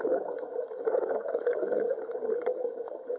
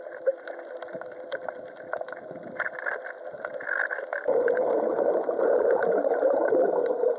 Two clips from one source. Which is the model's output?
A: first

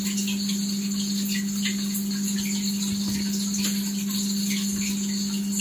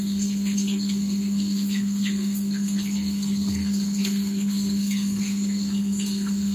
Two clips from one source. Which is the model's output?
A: second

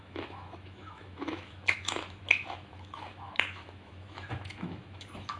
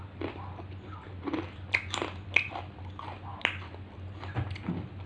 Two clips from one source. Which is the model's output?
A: first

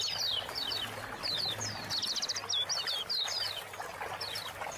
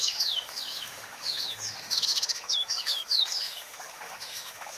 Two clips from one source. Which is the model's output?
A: second